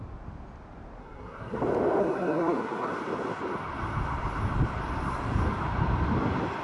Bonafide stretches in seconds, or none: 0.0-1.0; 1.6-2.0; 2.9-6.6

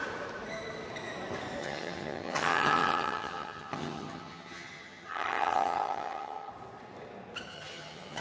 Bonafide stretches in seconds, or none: 0.0-1.6; 6.5-7.5

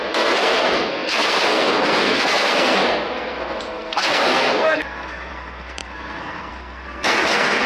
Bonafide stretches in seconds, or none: none

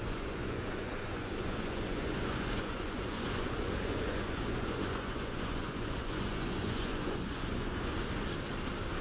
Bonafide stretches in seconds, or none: 7.9-9.0

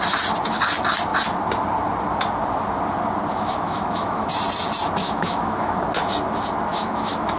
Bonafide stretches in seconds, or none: 0.0-3.3; 4.3-5.0; 5.8-6.7